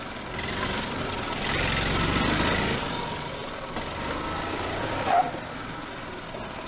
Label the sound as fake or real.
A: real